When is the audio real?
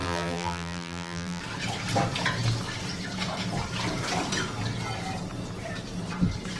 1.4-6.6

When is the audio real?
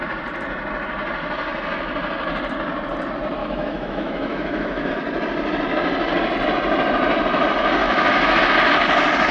0.0-3.4; 4.9-7.8; 8.4-9.3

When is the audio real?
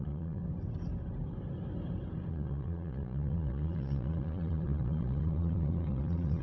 0.4-2.3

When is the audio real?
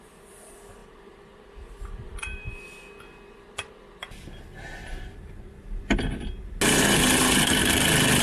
0.0-0.8; 2.5-4.8; 5.8-8.2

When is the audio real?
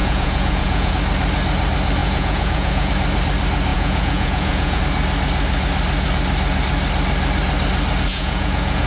0.9-2.0; 2.9-3.7; 4.8-8.1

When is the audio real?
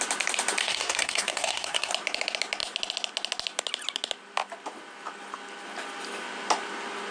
0.0-0.6; 1.9-7.1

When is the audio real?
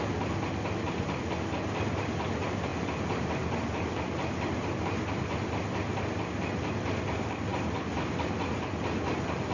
0.0-9.5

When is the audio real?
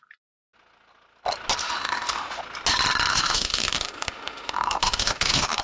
0.0-1.6; 2.4-3.1